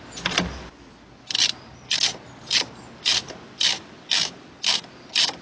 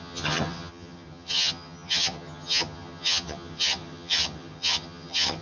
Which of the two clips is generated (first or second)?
second